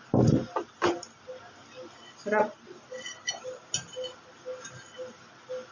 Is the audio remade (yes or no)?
no